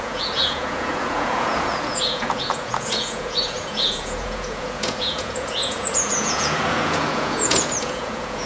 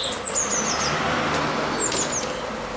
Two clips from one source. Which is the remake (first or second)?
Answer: first